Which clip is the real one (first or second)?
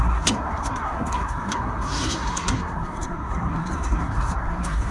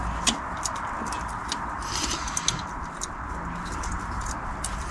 second